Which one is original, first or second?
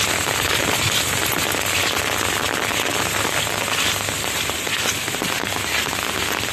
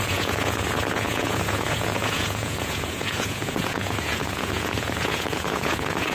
first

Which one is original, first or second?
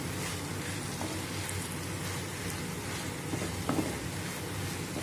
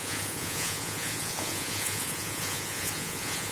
first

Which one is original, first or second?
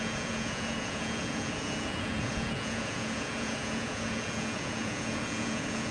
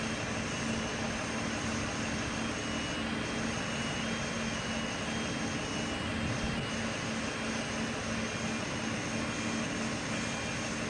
second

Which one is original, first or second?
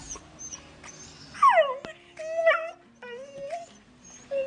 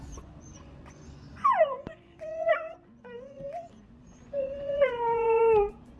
first